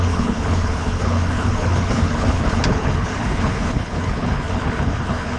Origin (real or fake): fake